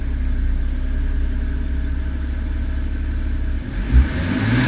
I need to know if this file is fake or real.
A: real